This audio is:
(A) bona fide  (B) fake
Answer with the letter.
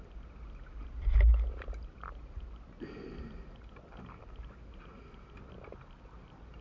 A